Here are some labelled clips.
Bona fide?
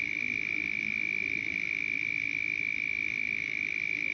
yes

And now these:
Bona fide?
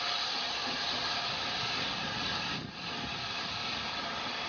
yes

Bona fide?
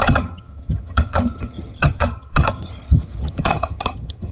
no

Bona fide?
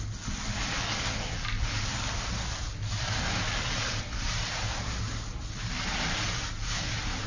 yes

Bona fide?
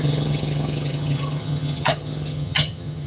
no